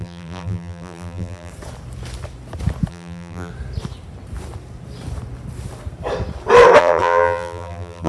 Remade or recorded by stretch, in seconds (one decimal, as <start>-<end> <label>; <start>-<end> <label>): 0.0-1.5 remade; 1.5-2.9 recorded; 2.9-3.5 remade; 3.5-6.8 recorded; 6.8-8.1 remade

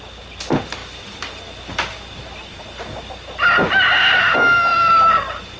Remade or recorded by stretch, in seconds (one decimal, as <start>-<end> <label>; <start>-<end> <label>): 0.0-4.7 recorded; 4.7-5.6 remade

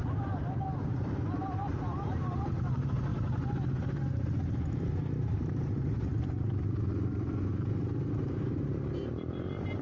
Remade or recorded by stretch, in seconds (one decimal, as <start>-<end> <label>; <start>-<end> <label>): 0.0-3.1 remade; 3.1-4.0 recorded; 4.0-9.8 remade

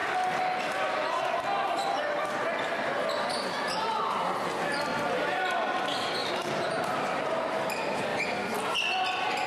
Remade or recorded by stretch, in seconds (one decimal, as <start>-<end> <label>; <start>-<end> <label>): 0.0-6.2 recorded; 6.2-6.8 remade; 6.8-9.5 recorded

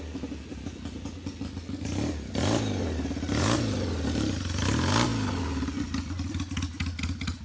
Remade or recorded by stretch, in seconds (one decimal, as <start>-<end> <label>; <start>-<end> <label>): 0.0-7.4 recorded